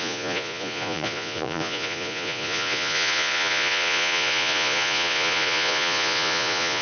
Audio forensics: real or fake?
fake